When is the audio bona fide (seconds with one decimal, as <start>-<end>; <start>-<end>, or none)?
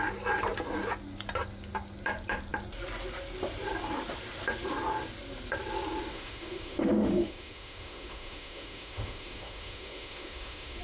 0.0-6.1